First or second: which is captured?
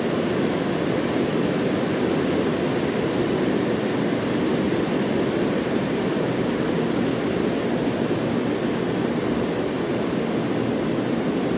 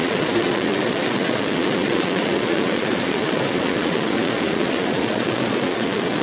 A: first